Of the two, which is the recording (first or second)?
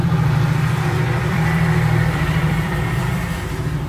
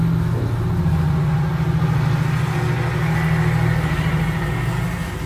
second